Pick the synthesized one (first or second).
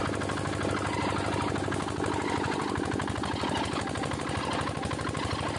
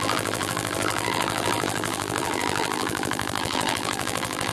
second